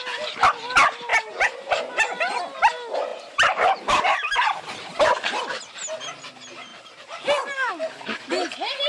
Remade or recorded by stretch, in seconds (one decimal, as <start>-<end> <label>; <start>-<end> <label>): 0.0-1.1 recorded; 1.1-2.3 remade; 2.3-3.1 recorded; 3.1-5.4 remade; 5.4-6.7 recorded; 6.7-7.7 remade; 7.7-8.9 recorded